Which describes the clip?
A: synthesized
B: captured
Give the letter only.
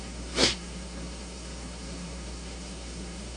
A